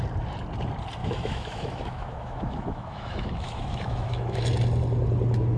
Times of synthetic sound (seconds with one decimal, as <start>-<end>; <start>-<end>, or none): 1.0-4.4

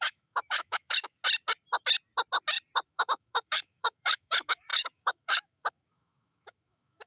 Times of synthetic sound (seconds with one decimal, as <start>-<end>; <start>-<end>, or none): 0.0-1.2; 2.9-7.1

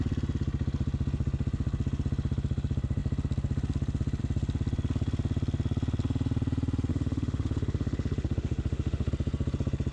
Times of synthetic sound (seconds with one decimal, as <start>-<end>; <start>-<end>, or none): 6.9-9.1

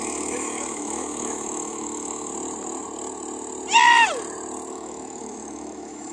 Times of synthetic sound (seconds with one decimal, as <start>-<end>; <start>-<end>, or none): 0.0-2.3; 4.7-6.1

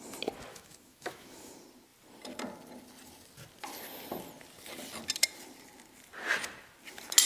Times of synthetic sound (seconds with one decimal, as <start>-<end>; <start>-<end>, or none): 0.5-1.5